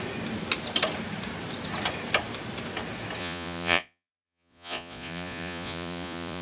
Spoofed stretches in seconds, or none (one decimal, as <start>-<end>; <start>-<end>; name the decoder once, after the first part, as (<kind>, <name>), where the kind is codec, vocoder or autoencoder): 3.2-6.4 (vocoder, Vocos)